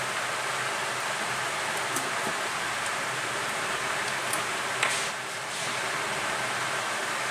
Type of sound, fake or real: real